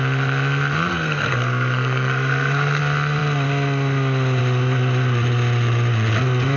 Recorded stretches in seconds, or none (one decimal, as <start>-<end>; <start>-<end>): 0.0-0.9; 2.8-6.6